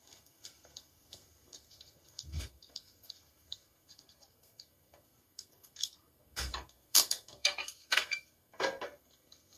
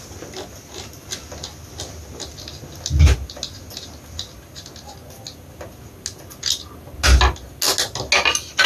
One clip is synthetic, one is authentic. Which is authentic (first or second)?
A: second